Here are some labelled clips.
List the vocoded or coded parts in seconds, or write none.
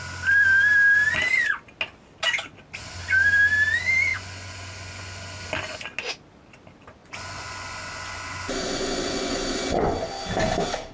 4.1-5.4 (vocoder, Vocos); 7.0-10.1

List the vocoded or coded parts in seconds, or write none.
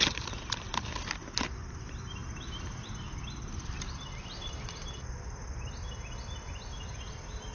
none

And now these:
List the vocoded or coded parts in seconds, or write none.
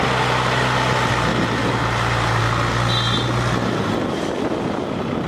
1.3-2.4 (vocoder, BigVGAN v2); 3.6-4.2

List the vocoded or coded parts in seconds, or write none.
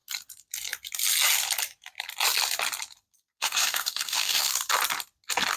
3.4-4.5 (codec, DAC)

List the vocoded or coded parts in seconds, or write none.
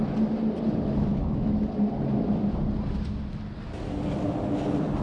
1.1-1.6 (autoencoder, DAC-VAE)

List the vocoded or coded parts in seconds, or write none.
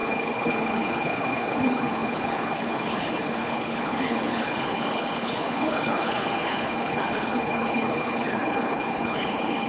0.0-9.7 (codec, HILCodec)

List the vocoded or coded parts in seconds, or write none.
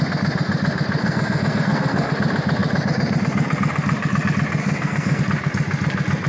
1.0-2.1 (codec, SNAC); 4.6-5.2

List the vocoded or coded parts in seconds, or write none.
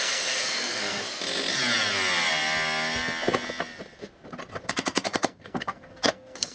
0.0-1.0 (codec, SNAC); 4.7-6.5